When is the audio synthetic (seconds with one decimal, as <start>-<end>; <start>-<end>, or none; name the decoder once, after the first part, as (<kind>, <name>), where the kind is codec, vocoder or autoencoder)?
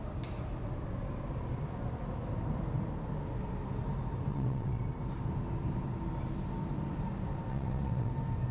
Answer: 4.3-4.8 (vocoder, WaveNeXt); 7.5-8.1